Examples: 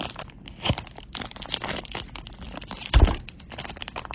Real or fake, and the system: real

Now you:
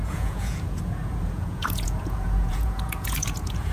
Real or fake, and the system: fake, vocoder, Vocos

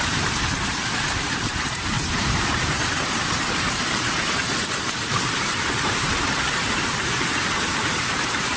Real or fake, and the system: fake, vocoder, BigVGAN v2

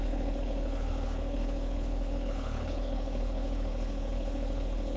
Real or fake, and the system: fake, codec, HILCodec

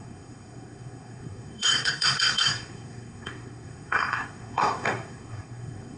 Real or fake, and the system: fake, codec, SNAC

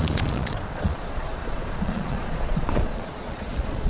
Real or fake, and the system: fake, vocoder, Vocos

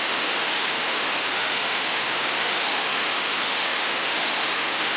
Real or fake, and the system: fake, autoencoder, DAC-VAE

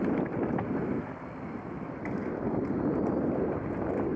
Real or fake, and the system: real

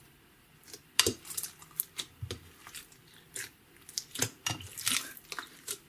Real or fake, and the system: real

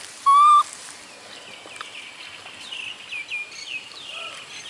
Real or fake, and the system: real